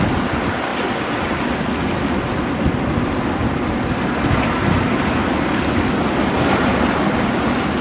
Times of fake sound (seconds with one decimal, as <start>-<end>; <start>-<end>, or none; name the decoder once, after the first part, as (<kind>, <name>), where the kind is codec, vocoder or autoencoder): none